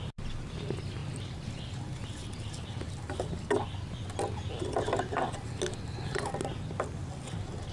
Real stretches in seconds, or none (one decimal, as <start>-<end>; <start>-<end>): 0.0-7.7